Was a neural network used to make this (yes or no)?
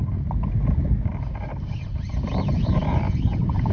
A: no